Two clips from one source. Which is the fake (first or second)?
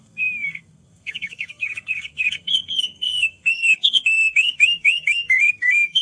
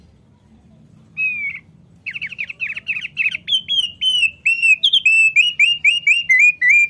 first